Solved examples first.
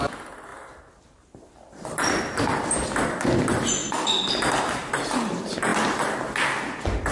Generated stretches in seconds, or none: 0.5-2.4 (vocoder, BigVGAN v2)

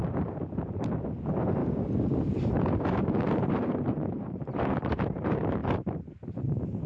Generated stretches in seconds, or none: 0.0-1.6 (vocoder, BigVGAN v2); 2.2-5.6; 6.4-6.9

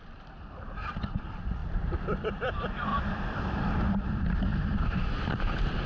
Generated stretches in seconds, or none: 1.6-2.5 (vocoder, BigVGAN v2); 2.9-3.6; 4.5-5.4